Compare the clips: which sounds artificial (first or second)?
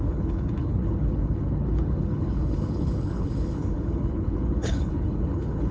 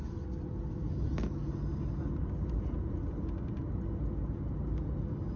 first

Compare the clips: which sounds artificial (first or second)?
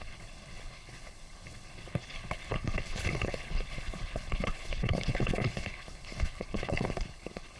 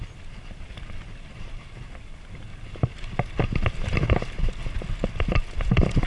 first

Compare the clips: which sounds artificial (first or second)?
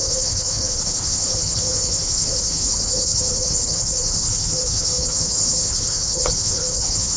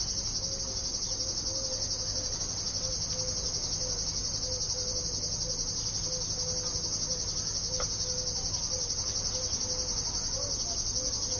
first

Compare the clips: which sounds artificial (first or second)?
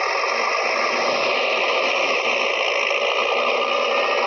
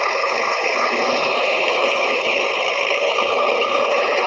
second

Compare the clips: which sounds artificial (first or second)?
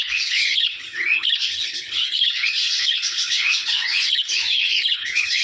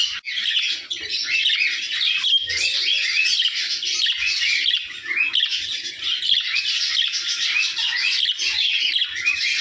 first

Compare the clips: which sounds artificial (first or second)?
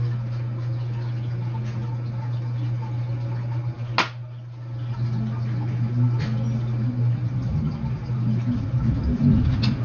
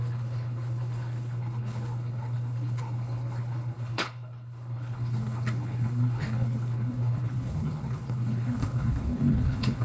second